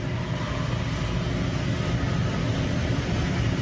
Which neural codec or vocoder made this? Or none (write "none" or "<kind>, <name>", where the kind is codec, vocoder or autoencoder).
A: none